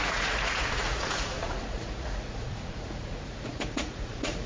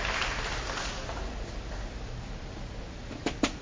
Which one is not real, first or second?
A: first